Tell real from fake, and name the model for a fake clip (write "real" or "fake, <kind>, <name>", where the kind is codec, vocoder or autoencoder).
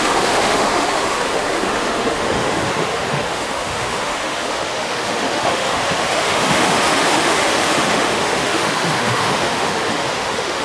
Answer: fake, autoencoder, DAC-VAE